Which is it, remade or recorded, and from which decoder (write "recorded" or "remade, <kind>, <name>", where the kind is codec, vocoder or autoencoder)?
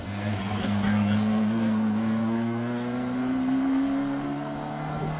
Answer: remade, codec, SNAC